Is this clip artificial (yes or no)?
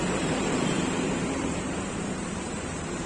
yes